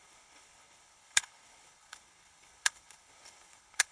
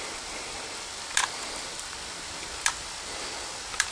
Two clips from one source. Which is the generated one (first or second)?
first